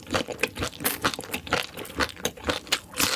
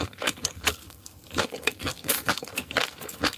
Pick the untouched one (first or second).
first